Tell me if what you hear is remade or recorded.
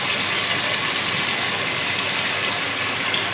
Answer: recorded